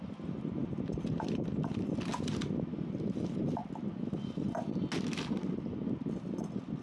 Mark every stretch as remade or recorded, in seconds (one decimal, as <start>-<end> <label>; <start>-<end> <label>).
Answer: 0.0-6.8 recorded